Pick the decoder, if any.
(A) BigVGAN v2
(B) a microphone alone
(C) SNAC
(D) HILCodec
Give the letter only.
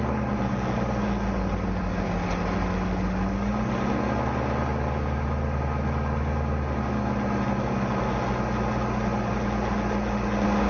B